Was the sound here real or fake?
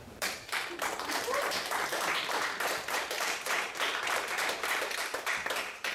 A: fake